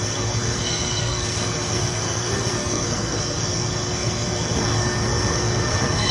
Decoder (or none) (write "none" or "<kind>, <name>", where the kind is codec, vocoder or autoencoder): codec, SNAC